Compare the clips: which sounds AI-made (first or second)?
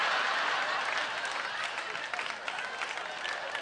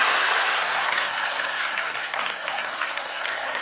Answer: second